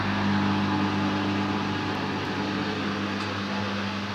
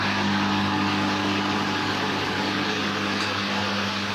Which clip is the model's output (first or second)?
second